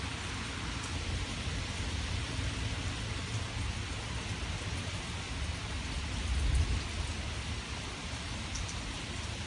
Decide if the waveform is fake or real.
real